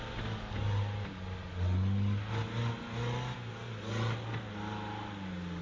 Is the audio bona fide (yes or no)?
yes